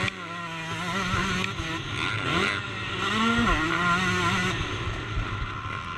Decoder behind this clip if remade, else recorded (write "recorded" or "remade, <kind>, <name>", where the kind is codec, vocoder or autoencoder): recorded